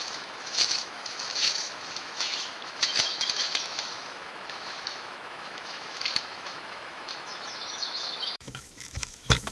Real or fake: fake